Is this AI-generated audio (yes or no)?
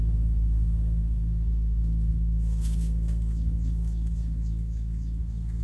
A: yes